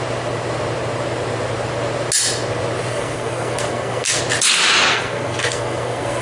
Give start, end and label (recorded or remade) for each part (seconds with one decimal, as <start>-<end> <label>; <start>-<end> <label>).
0.0-2.9 recorded; 2.9-4.2 remade; 4.2-4.9 recorded; 4.9-6.2 remade

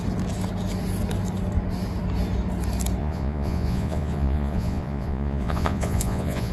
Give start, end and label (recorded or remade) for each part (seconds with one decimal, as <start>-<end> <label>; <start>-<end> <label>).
0.0-3.0 recorded; 3.0-6.5 remade

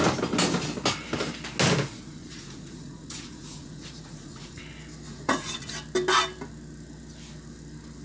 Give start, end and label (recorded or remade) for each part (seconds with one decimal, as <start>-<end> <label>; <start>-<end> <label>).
0.0-1.9 recorded; 1.9-4.6 remade; 4.6-5.1 recorded; 5.1-5.7 remade; 5.7-8.0 recorded

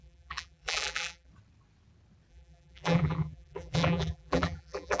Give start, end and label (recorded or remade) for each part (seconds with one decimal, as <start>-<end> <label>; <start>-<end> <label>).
0.0-1.3 remade; 1.3-2.3 recorded; 2.3-5.0 remade